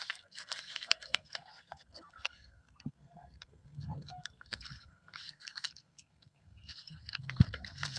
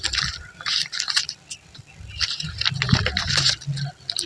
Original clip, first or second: second